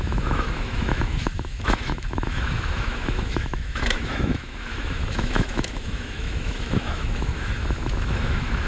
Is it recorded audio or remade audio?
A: remade